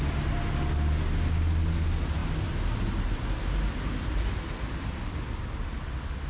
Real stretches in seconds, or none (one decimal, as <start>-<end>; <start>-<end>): 0.0-6.3